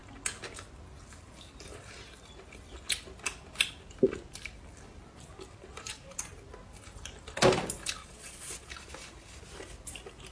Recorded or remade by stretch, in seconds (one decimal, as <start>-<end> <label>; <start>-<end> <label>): 0.0-8.0 recorded; 8.0-8.7 remade; 8.7-10.3 recorded